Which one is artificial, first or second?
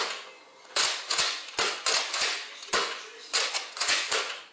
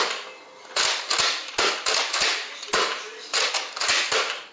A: first